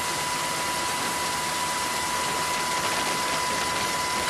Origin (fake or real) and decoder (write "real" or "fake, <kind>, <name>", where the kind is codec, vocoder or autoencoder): real